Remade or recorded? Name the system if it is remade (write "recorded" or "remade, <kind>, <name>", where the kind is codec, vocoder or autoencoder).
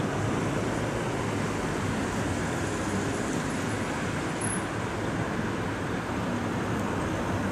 recorded